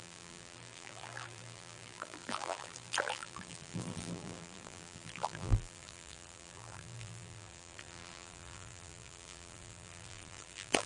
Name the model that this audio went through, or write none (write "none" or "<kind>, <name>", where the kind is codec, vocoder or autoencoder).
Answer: vocoder, BigVGAN v2